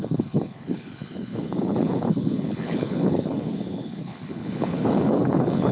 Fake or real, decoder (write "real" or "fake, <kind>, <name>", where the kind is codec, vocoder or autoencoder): fake, codec, HILCodec